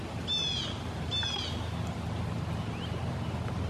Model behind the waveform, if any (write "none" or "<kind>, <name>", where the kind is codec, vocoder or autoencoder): none